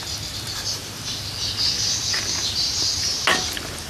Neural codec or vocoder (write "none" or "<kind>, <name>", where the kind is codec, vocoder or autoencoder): none